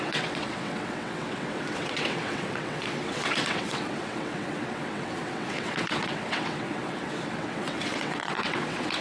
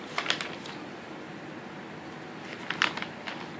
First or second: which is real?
second